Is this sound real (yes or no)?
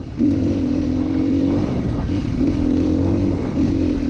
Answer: no